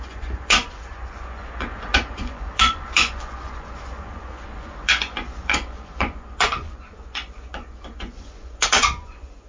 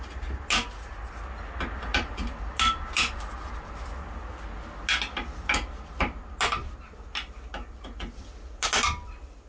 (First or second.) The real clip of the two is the second